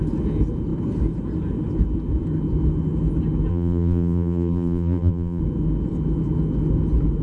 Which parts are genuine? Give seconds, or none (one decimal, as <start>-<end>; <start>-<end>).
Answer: 0.0-3.5; 5.4-7.2